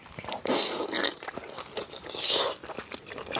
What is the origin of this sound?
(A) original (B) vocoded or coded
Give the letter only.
A